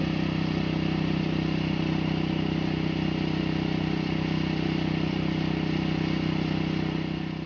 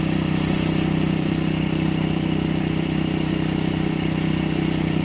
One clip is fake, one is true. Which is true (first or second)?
first